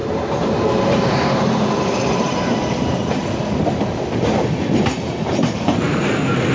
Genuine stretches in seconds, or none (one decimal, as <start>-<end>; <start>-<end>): 3.6-4.9; 6.1-6.5